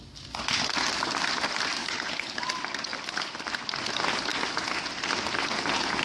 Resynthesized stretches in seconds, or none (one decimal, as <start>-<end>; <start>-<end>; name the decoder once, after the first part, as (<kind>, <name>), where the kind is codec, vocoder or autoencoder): 1.8-2.4 (codec, HILCodec)